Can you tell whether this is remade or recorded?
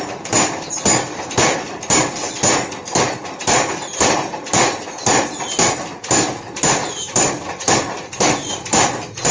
recorded